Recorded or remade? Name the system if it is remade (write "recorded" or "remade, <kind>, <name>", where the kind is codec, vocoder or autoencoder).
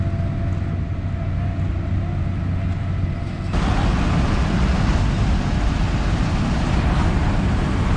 recorded